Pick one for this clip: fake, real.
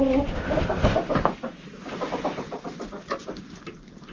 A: real